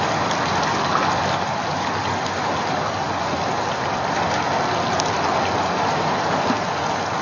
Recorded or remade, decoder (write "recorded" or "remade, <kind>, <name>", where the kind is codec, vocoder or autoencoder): recorded